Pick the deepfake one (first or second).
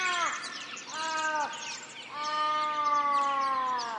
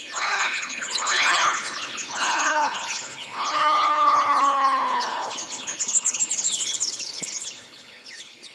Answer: second